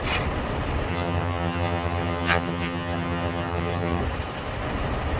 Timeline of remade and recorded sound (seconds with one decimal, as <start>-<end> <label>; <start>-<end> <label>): 0.0-0.9 recorded; 0.9-4.0 remade; 4.0-5.2 recorded